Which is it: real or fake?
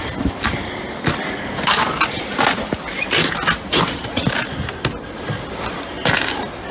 real